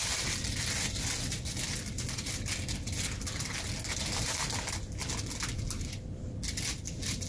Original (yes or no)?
yes